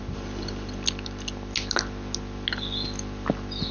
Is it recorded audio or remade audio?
recorded